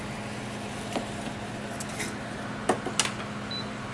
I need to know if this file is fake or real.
real